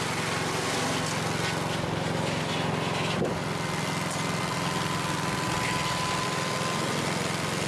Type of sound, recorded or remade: recorded